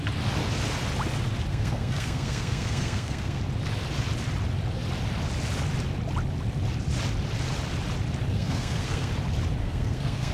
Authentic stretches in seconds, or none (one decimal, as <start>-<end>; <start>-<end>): 0.0-1.5; 3.4-8.3; 9.1-9.6